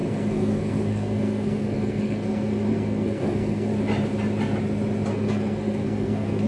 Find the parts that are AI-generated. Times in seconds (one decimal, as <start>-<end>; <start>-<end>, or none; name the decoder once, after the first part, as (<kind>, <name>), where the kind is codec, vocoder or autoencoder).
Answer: 0.0-3.7 (codec, SNAC); 5.1-6.5